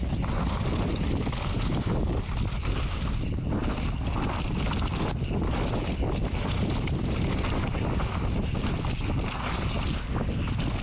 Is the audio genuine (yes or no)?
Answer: yes